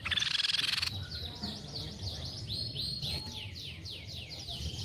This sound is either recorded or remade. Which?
recorded